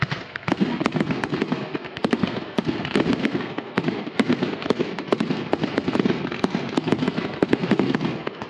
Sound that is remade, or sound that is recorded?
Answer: remade